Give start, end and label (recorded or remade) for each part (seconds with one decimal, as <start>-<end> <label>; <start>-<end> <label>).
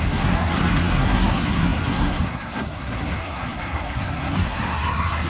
0.0-5.3 remade